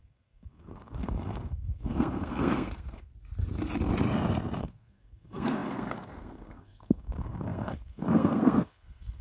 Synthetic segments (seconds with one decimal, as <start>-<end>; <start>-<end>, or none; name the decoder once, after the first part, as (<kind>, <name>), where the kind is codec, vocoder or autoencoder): 0.0-3.1 (codec, SNAC); 4.6-9.2